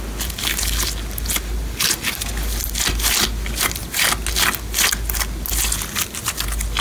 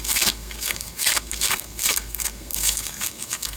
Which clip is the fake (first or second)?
second